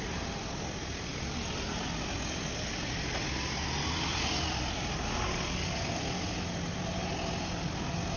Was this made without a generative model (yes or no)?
yes